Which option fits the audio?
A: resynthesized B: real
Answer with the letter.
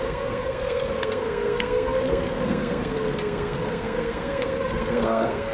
A